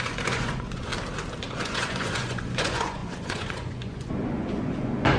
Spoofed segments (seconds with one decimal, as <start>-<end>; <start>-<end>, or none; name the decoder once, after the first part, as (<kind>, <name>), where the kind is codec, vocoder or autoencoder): 0.0-0.9 (vocoder, Vocos); 1.5-5.2